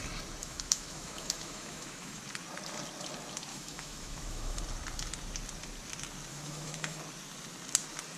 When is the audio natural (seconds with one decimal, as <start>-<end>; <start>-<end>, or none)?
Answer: 0.0-0.4; 2.2-3.5; 4.6-6.3; 7.0-8.2